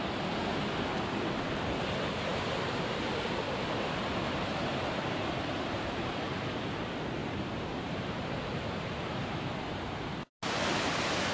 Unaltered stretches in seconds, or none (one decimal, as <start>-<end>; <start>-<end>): 0.0-4.2; 5.9-7.2; 9.5-11.3